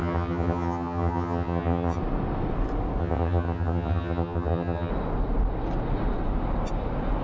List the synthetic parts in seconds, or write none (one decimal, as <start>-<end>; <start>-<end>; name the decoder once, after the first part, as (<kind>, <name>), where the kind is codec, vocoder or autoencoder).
0.0-2.0 (vocoder, HiFi-GAN); 3.0-4.9